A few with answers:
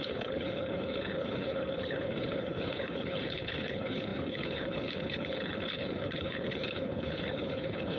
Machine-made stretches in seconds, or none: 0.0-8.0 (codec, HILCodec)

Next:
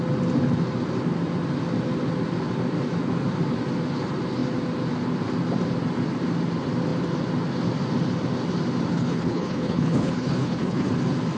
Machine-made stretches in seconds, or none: 8.9-10.9 (codec, HILCodec)

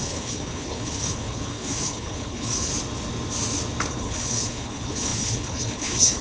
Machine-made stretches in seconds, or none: 0.0-2.7 (codec, HILCodec); 3.9-6.2